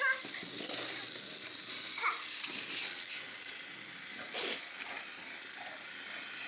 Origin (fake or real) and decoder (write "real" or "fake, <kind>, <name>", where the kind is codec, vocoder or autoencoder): real